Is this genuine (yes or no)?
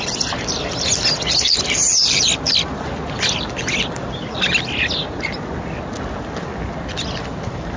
yes